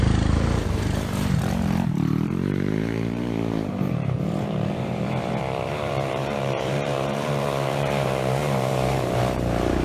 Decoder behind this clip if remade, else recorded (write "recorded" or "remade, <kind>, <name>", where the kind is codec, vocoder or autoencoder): remade, vocoder, BigVGAN v2